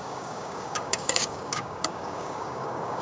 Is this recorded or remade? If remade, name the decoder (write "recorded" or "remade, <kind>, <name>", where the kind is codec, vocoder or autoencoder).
remade, codec, DAC